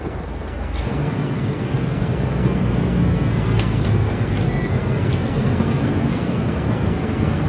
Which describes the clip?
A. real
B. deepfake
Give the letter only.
B